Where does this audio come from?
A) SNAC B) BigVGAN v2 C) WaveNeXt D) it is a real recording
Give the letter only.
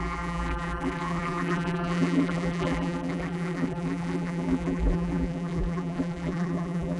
B